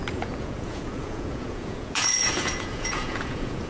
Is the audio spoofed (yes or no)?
yes